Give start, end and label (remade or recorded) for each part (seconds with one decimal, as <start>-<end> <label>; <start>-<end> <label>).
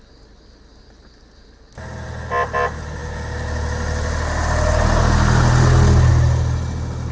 0.0-7.1 recorded